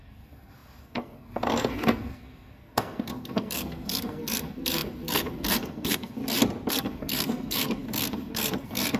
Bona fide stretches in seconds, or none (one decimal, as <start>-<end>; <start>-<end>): 6.2-6.7